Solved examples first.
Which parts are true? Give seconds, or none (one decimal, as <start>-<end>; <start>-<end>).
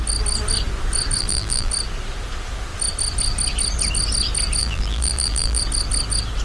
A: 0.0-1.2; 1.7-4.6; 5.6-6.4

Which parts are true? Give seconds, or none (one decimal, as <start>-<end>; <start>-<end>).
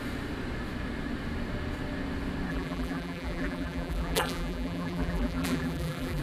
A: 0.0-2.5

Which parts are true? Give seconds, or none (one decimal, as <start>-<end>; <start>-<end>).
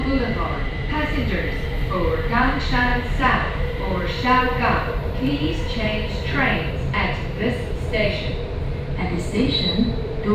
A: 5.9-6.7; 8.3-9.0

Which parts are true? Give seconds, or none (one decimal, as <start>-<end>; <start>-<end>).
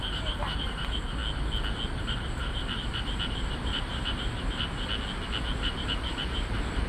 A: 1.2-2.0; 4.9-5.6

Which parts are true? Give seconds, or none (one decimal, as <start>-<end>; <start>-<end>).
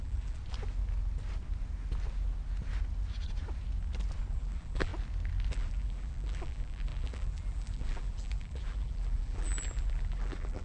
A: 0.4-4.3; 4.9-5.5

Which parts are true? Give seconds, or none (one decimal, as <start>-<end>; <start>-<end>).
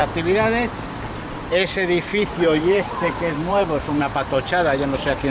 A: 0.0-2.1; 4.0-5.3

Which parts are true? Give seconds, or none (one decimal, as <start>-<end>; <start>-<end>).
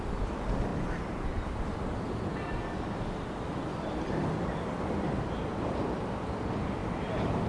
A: 0.0-7.5